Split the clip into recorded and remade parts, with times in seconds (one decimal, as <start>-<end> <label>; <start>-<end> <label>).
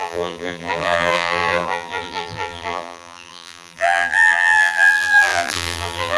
0.0-6.2 remade